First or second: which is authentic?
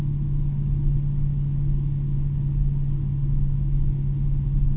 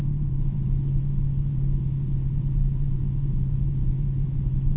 first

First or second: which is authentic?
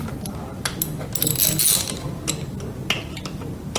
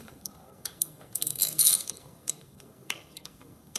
first